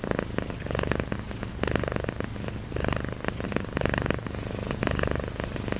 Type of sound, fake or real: real